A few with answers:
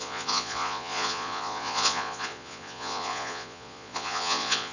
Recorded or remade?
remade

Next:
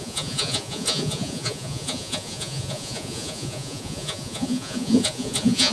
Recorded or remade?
remade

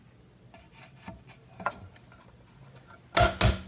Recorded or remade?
recorded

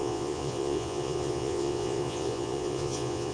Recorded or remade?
remade